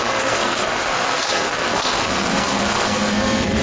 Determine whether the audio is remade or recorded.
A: remade